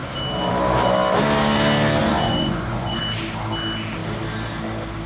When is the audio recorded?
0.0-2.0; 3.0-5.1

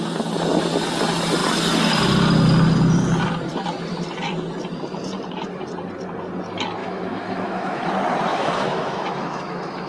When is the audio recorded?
0.0-6.8; 7.9-8.3

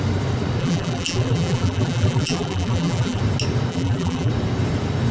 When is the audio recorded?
0.0-0.6; 3.2-3.7; 4.3-5.1

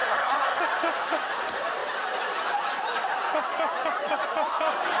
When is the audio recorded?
0.6-5.0

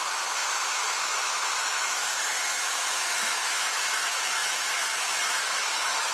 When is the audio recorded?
none